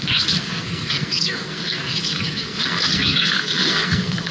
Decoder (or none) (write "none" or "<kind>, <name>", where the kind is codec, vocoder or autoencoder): codec, SNAC